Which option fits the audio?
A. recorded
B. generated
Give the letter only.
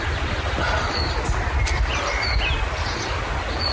A